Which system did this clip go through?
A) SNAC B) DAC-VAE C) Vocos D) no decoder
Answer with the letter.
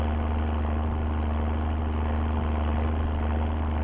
D